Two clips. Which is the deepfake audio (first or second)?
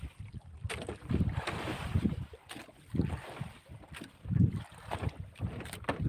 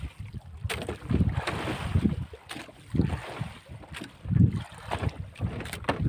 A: first